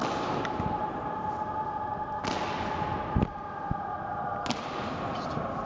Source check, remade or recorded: recorded